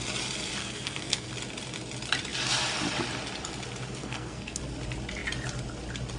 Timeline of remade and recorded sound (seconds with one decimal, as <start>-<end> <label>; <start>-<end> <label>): 0.0-0.6 recorded; 0.6-1.3 remade; 1.3-4.0 recorded; 4.0-4.6 remade; 4.6-6.2 recorded